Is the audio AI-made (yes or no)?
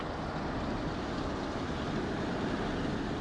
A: no